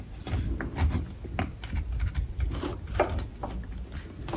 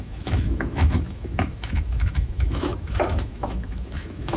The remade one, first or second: second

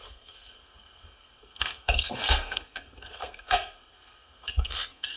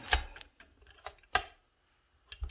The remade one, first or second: first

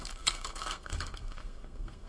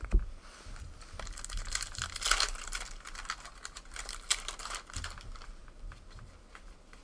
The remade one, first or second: first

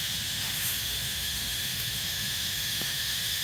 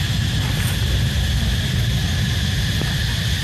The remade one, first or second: first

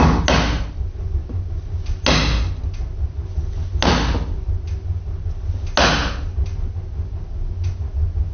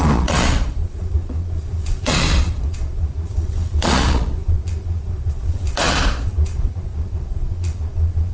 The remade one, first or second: second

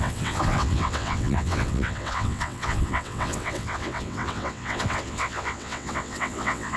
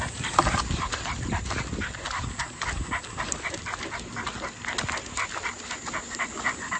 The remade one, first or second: first